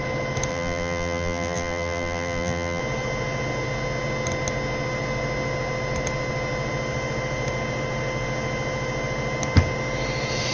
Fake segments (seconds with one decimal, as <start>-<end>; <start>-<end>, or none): 0.5-2.8